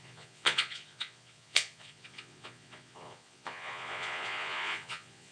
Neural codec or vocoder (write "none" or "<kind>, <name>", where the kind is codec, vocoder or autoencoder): vocoder, Vocos